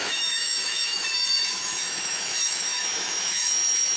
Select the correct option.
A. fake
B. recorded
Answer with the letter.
A